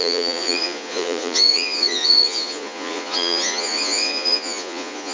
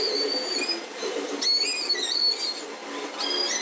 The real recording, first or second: second